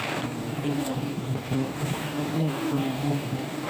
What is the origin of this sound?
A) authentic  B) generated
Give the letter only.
B